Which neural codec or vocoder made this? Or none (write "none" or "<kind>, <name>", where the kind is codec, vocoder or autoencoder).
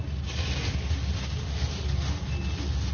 none